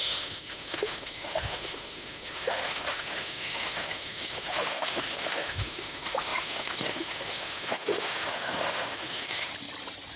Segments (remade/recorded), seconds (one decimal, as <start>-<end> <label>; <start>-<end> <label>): 0.0-9.5 remade; 9.5-10.2 recorded